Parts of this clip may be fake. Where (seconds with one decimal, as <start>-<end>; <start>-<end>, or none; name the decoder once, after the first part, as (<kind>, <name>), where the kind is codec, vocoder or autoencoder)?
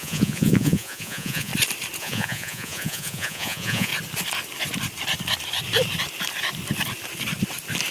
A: 0.0-1.5 (vocoder, Vocos); 2.0-3.9